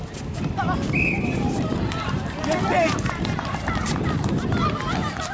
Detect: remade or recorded recorded